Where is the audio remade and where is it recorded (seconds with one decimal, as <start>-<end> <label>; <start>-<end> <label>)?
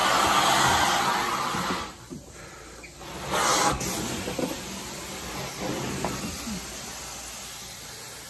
0.0-8.3 recorded